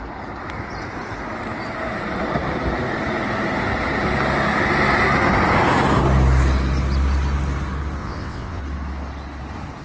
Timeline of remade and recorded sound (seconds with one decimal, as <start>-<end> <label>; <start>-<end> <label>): 0.0-8.0 recorded; 8.0-8.6 remade; 8.6-9.8 recorded